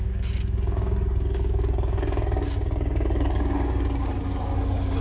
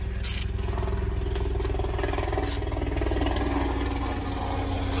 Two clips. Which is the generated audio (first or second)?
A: first